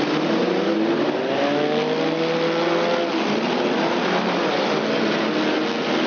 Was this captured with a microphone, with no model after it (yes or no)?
yes